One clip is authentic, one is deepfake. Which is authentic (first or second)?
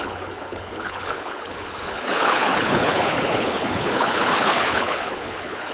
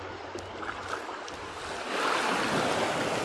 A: second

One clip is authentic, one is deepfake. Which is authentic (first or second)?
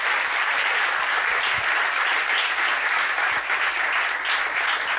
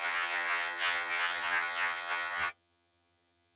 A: first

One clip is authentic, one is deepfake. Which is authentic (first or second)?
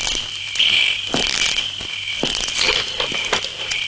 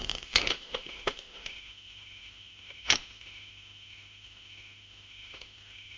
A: first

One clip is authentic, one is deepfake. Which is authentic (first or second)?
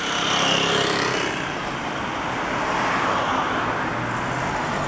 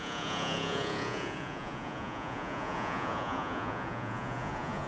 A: first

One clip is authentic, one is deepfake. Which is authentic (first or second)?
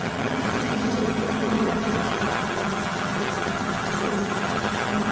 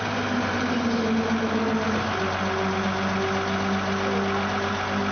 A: second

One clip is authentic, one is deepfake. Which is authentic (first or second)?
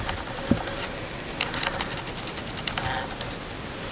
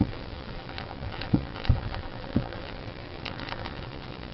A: first